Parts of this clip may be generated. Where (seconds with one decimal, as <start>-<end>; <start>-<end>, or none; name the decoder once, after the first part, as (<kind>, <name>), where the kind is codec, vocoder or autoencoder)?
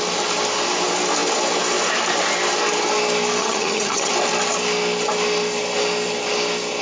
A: 3.4-4.1 (vocoder, HiFi-GAN)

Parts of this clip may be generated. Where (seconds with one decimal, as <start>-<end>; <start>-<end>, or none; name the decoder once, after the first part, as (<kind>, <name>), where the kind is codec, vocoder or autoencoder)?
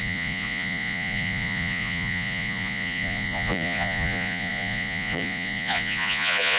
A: 0.0-6.6 (vocoder, Vocos)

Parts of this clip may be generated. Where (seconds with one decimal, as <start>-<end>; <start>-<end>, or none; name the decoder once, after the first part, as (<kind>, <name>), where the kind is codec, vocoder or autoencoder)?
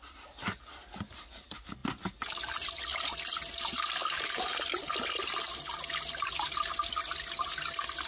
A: none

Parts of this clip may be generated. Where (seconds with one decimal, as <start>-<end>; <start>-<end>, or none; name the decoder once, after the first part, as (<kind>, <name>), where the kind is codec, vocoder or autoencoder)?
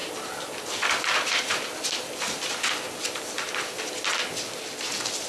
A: none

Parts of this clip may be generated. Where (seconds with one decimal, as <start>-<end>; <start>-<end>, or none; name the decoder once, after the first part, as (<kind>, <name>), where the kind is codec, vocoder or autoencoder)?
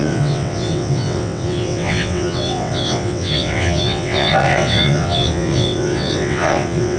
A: 0.0-7.0 (vocoder, WaveNeXt)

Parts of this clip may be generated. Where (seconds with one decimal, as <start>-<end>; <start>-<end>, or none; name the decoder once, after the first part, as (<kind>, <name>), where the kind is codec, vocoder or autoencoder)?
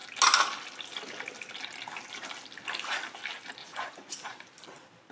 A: 3.6-4.5 (vocoder, Vocos)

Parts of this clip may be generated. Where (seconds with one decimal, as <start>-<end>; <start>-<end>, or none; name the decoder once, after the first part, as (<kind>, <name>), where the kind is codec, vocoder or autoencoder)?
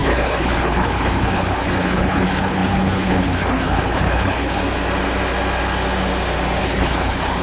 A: 0.0-4.6 (codec, HILCodec); 6.6-7.4